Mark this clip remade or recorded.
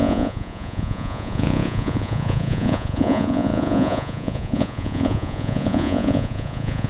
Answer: remade